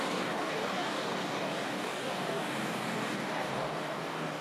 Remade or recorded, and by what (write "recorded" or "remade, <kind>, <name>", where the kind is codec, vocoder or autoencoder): remade, codec, DAC